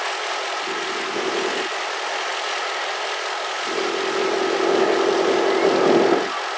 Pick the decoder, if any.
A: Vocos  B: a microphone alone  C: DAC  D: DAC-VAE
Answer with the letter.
B